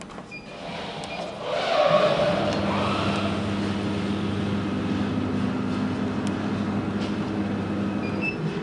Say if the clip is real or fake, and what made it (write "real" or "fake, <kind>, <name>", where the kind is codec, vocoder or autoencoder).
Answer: real